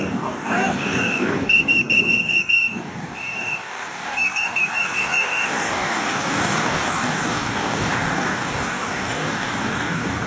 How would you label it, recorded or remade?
remade